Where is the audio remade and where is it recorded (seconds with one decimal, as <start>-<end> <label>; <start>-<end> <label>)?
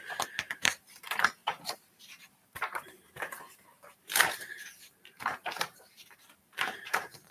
0.0-7.3 remade